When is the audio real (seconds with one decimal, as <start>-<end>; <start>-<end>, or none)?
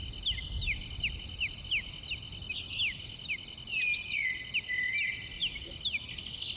0.0-6.6